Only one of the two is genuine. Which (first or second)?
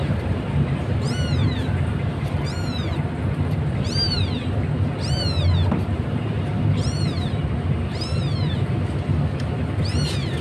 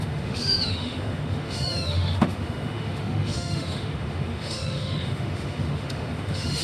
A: first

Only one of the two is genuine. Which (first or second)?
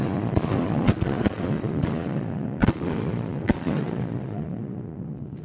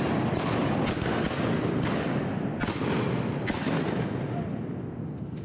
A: second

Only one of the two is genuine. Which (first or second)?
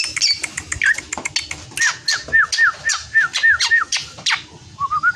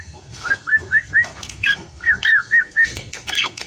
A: first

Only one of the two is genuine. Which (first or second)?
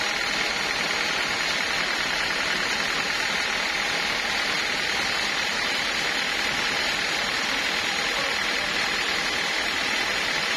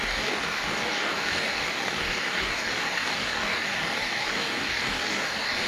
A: first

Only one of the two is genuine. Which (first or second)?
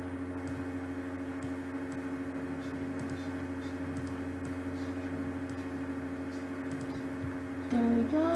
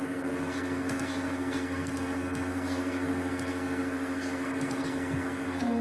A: first